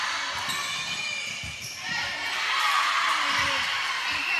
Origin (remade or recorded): recorded